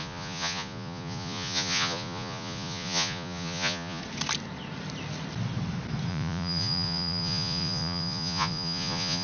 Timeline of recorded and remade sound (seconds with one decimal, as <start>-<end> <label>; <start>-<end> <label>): 0.0-4.0 remade; 4.0-6.1 recorded; 6.1-9.2 remade